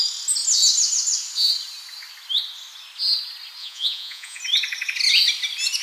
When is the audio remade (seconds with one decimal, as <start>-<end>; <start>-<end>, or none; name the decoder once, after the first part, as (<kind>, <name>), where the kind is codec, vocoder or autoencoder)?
3.6-4.4 (vocoder, Vocos)